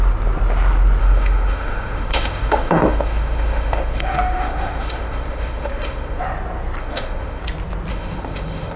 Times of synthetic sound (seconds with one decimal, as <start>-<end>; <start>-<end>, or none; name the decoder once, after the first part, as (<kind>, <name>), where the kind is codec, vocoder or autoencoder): 1.0-6.2 (autoencoder, DAC-VAE); 6.8-7.4; 7.9-8.8